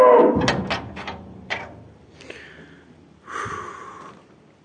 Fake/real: real